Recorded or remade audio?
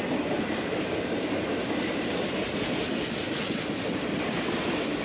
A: recorded